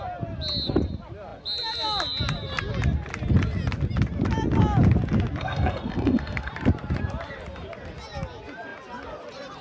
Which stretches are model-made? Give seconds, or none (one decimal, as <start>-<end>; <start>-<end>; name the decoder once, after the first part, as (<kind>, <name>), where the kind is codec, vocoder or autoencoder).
5.4-6.5 (codec, SNAC)